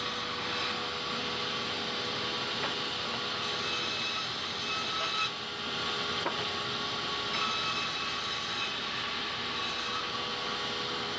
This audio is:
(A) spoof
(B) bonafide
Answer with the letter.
B